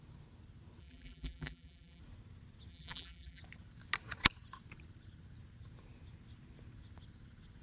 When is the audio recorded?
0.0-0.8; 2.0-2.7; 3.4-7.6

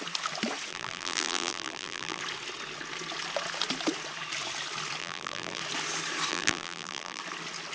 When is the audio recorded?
0.0-0.7; 2.2-5.0; 5.6-6.3; 7.2-7.7

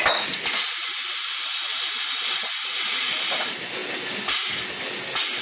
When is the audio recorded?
0.0-1.0; 1.6-5.4